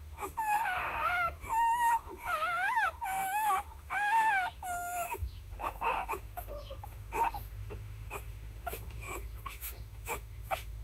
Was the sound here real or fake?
fake